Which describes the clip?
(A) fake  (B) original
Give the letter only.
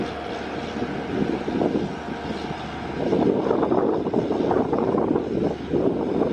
B